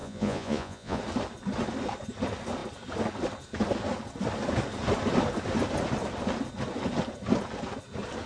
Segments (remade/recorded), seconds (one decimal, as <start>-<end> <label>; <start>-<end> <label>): 0.0-1.0 remade; 1.0-8.3 recorded